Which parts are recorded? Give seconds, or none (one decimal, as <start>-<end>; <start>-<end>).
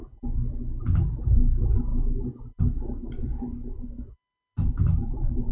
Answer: 0.0-5.5